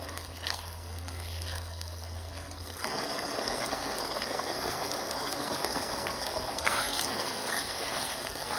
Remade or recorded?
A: remade